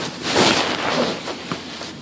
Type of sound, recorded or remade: recorded